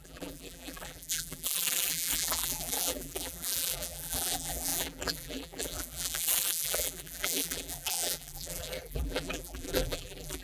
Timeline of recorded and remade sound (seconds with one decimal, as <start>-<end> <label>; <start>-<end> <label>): 0.0-10.4 remade